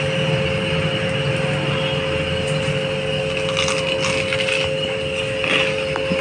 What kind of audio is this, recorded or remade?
recorded